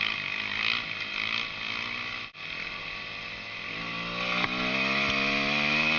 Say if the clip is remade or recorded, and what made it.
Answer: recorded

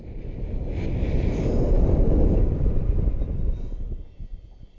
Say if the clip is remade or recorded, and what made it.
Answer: recorded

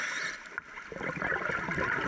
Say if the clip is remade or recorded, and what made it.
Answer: remade, vocoder, BigVGAN v2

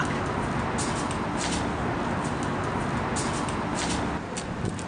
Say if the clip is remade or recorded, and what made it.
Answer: recorded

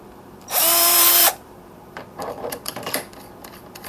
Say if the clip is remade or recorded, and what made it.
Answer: remade, vocoder, BigVGAN v2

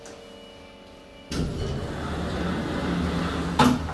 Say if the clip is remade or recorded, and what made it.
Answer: recorded